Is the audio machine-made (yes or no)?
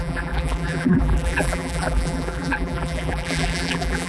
yes